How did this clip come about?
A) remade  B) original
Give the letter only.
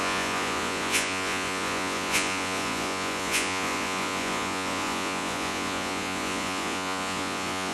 A